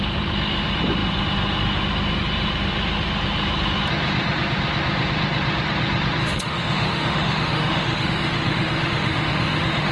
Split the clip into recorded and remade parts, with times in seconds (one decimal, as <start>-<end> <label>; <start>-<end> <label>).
0.0-6.2 recorded; 6.2-9.9 remade